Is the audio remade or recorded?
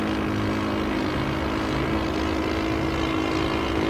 recorded